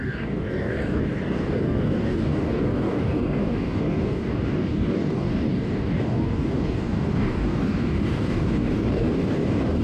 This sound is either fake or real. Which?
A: fake